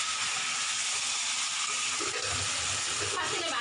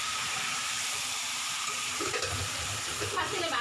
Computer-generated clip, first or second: second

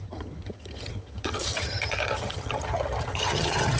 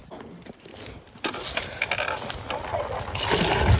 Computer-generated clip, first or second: first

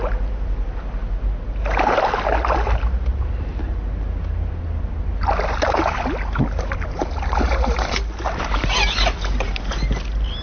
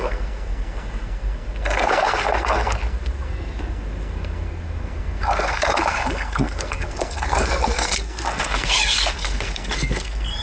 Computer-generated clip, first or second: second